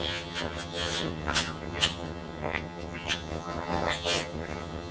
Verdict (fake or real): fake